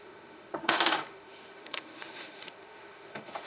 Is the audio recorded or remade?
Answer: remade